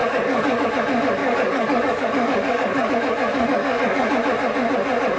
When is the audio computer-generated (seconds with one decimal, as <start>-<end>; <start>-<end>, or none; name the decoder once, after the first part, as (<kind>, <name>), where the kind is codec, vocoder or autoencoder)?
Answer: 0.0-0.7 (codec, DAC); 1.2-2.9; 3.3-4.1